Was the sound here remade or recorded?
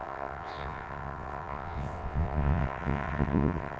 remade